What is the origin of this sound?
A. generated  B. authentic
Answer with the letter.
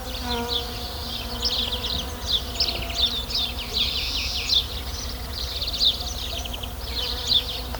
B